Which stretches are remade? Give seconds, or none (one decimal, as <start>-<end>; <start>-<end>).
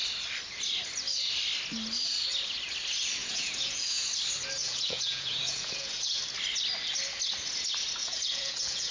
3.2-4.1; 4.6-6.2; 8.0-8.9